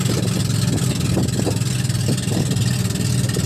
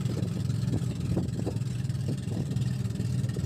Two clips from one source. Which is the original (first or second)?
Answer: first